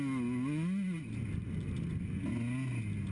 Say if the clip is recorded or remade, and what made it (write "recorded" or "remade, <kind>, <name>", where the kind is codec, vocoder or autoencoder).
recorded